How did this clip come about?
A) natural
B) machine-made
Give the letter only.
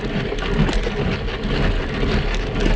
A